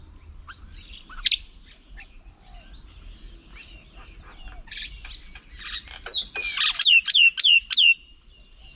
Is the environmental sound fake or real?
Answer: real